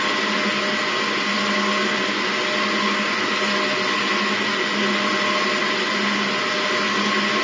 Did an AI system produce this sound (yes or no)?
no